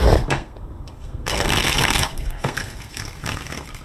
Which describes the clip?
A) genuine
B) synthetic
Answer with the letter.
B